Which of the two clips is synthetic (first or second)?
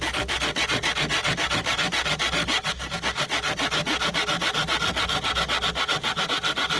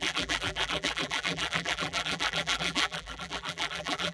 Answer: second